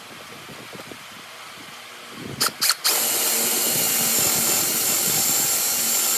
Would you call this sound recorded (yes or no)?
yes